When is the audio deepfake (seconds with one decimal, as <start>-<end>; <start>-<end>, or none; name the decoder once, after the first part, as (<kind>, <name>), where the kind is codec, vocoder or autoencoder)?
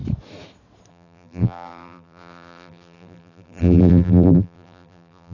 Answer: 0.9-5.3 (vocoder, BigVGAN v2)